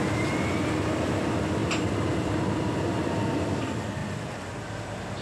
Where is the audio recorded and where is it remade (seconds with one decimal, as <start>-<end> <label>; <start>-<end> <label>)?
0.0-5.2 recorded